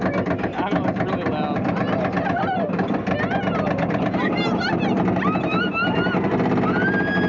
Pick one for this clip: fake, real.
real